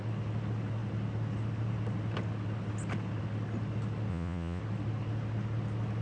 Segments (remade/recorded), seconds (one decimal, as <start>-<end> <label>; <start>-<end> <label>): 0.0-4.1 recorded; 4.1-4.6 remade; 4.6-6.0 recorded